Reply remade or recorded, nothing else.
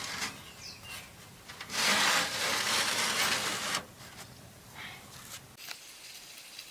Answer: recorded